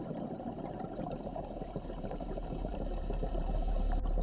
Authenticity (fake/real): fake